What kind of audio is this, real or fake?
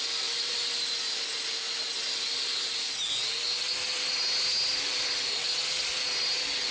real